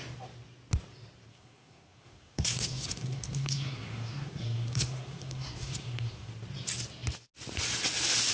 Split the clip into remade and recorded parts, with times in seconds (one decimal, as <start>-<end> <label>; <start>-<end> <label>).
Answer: 0.0-1.3 recorded; 1.3-6.3 remade; 6.3-8.3 recorded